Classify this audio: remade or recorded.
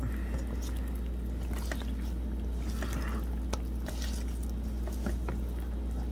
recorded